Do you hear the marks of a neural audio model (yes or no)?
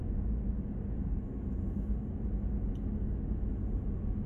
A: no